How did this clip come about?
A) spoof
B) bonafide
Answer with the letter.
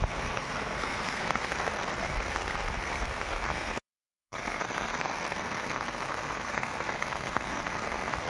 A